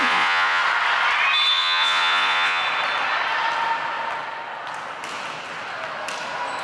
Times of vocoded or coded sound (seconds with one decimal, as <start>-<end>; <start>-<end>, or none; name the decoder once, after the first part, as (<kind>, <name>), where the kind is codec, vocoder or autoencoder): 0.0-0.6 (vocoder, Vocos); 1.5-2.6